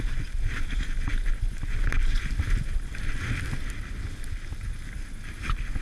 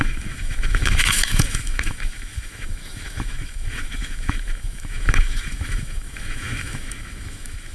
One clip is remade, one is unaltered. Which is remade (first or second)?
second